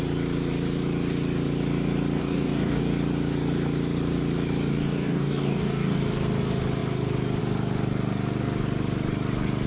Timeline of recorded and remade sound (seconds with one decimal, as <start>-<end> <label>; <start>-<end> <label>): 0.0-2.2 recorded; 2.2-2.8 remade; 2.8-4.7 recorded; 4.7-6.0 remade; 6.0-9.7 recorded